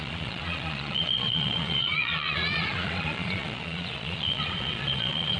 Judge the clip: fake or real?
fake